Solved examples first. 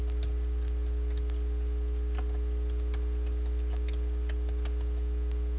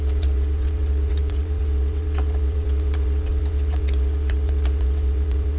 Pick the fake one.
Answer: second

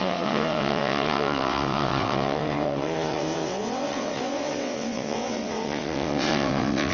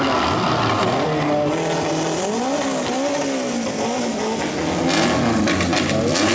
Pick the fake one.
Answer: first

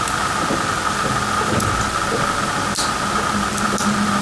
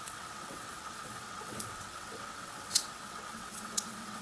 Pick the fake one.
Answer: second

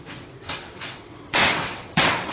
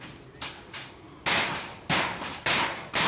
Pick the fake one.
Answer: first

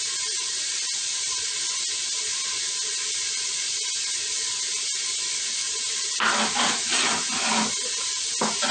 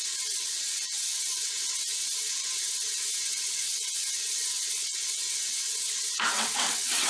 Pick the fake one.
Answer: second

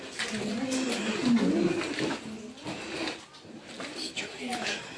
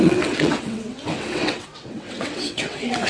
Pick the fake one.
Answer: second